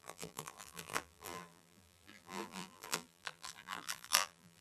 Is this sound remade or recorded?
remade